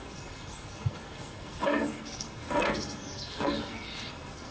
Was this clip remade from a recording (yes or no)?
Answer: yes